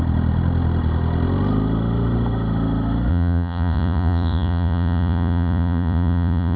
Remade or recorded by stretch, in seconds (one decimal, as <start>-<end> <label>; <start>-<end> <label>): 0.0-3.1 recorded; 3.1-6.6 remade